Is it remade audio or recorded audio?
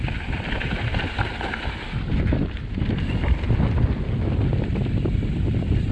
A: recorded